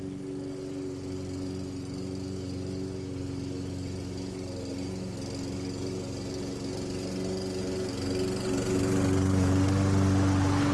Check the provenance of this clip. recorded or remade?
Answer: recorded